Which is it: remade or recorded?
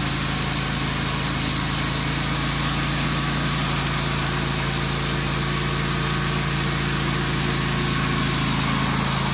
recorded